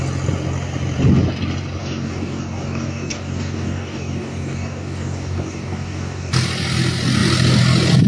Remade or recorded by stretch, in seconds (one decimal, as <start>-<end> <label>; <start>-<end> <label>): 0.0-1.8 recorded; 1.8-6.3 remade; 6.3-8.1 recorded